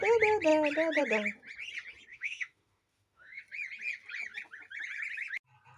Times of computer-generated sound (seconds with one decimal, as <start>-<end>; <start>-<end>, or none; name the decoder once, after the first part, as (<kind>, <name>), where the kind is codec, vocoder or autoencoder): 2.1-3.4 (autoencoder, DAC-VAE)